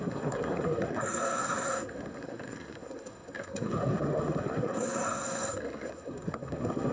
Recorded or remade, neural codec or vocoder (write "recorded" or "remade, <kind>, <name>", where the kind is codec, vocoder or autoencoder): remade, codec, SNAC